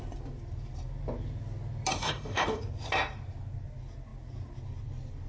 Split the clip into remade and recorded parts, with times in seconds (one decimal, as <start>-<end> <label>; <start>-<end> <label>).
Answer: 0.0-1.9 recorded; 1.9-2.6 remade; 2.6-5.3 recorded